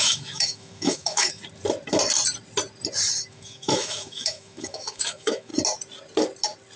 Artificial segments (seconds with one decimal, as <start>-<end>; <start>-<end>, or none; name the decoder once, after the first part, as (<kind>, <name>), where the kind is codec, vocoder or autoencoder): 0.0-1.4 (autoencoder, DAC-VAE); 3.3-5.5